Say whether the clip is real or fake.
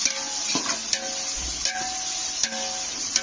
real